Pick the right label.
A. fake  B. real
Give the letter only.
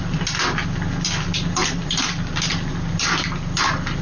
B